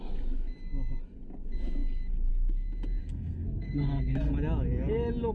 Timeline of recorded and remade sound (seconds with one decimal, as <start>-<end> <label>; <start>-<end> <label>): 0.0-3.0 recorded; 3.0-4.3 remade; 4.3-5.3 recorded